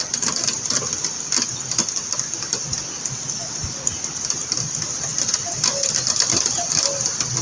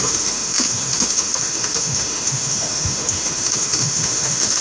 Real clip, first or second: first